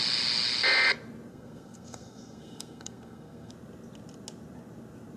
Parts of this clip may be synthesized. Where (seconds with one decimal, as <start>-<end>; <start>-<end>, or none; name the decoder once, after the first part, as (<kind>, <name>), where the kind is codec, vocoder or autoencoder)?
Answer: 1.3-3.5 (codec, SNAC)